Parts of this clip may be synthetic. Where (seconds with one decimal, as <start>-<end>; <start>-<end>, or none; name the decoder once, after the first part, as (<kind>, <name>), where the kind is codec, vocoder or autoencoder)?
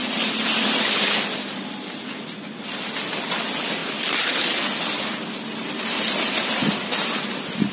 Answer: none